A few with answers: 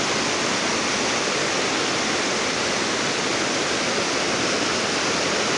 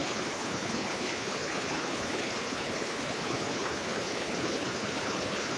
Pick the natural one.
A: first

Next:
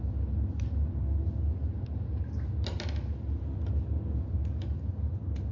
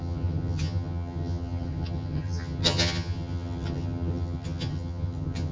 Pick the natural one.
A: first